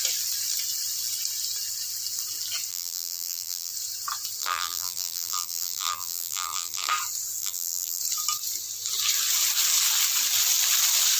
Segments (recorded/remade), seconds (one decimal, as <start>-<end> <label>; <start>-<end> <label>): 0.0-2.7 recorded; 2.7-3.7 remade; 3.7-4.4 recorded; 4.4-6.9 remade; 6.9-7.4 recorded; 7.4-8.0 remade; 8.0-11.2 recorded